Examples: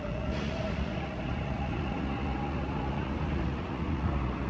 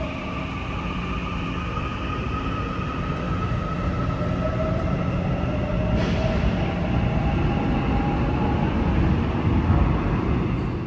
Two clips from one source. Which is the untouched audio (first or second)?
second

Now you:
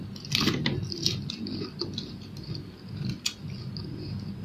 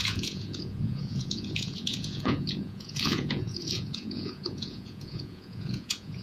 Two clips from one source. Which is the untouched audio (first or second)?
first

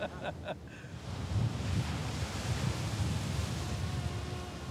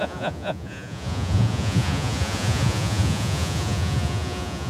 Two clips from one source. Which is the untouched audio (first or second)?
first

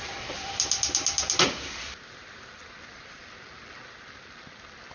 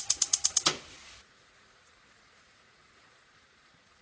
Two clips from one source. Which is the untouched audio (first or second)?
first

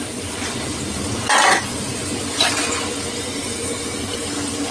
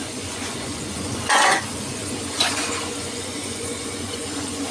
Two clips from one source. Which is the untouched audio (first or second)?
first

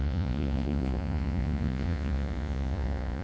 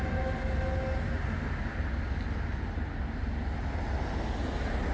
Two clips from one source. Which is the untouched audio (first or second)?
second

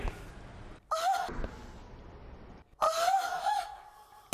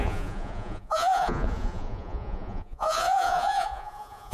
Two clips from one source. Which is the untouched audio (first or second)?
first